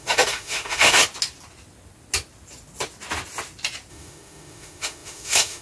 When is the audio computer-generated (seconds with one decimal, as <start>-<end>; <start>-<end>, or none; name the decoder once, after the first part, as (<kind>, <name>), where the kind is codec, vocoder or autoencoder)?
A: 0.0-1.0 (autoencoder, DAC-VAE); 3.9-5.6